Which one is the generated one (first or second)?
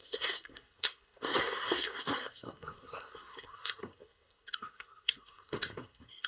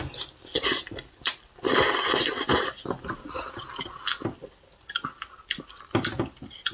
first